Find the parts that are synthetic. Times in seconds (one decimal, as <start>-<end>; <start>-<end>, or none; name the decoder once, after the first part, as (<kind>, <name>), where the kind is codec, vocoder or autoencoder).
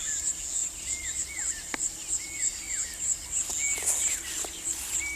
none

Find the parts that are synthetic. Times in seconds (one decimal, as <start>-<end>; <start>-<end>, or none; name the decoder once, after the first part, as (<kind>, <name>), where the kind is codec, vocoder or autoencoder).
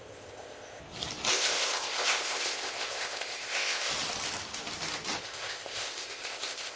0.0-0.8 (codec, ZipCodec); 1.3-3.9; 5.2-6.8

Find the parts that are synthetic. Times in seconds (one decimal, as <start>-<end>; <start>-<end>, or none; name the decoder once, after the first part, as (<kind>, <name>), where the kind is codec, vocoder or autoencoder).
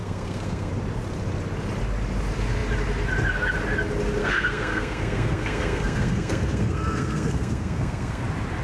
0.0-0.7 (codec, SNAC); 4.2-8.2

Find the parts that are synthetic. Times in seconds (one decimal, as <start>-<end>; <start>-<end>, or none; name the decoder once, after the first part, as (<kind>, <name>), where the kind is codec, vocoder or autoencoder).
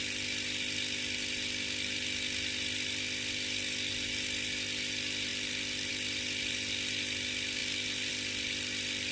none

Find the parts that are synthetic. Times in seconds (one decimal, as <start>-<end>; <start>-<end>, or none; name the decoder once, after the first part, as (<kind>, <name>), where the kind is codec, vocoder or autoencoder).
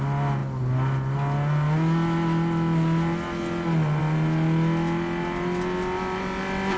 none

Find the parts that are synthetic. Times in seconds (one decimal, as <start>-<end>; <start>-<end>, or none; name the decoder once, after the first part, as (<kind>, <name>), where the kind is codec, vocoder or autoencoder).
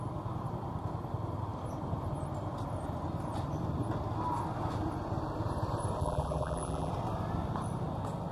6.0-6.9 (vocoder, BigVGAN v2)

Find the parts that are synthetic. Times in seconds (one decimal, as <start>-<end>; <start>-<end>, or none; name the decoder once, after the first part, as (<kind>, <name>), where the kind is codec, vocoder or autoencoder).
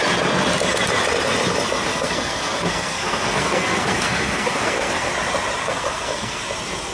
1.9-5.1 (codec, SNAC); 5.6-6.4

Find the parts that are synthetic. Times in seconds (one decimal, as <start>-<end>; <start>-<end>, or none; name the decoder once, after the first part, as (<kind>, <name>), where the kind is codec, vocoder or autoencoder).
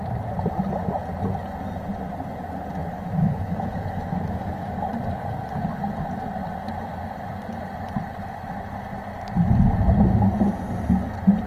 2.8-4.7 (autoencoder, DAC-VAE)